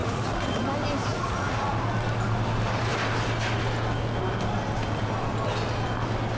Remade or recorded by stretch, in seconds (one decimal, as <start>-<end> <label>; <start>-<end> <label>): 0.0-0.6 remade; 0.6-1.1 recorded; 1.1-1.7 remade; 1.7-6.4 recorded